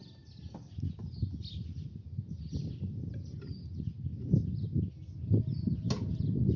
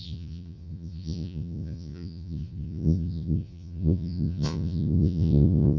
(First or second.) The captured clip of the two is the first